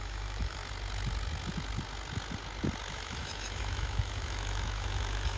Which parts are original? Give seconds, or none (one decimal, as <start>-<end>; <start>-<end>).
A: 0.6-2.9